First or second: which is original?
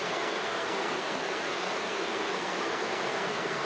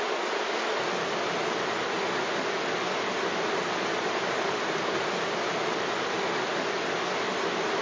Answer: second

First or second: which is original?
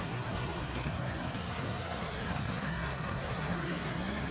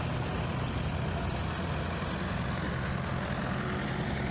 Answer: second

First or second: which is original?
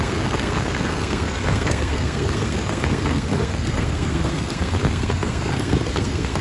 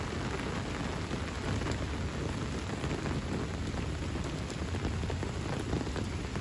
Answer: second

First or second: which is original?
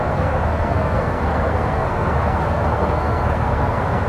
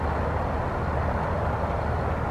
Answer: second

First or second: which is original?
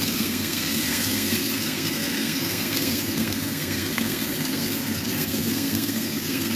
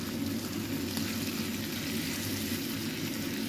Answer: second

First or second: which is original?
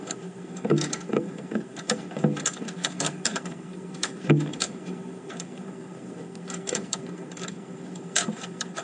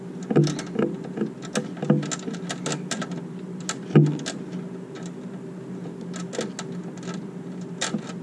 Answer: second